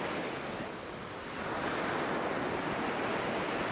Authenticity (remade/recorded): recorded